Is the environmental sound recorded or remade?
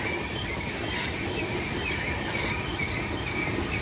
remade